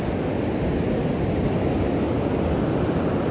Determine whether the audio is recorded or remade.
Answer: recorded